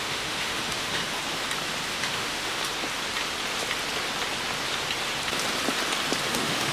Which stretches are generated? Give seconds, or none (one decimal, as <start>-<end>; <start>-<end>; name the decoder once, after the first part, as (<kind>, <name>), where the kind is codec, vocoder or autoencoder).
0.0-1.0 (autoencoder, DAC-VAE); 1.9-2.6; 6.3-6.7

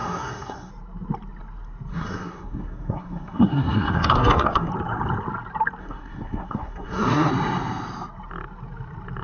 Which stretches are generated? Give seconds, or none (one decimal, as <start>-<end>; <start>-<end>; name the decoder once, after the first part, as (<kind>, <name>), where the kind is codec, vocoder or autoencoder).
0.0-0.7 (codec, SNAC); 1.9-4.7; 5.8-7.3

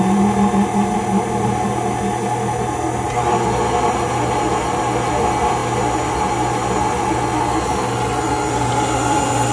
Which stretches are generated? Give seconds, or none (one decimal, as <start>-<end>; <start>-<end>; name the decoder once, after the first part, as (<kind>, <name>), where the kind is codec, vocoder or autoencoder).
none

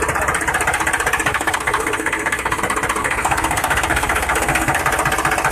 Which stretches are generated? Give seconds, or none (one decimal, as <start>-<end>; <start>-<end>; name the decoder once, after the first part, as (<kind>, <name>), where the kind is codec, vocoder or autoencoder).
1.3-2.6 (codec, SNAC); 3.0-4.8